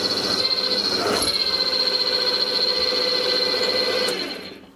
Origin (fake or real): real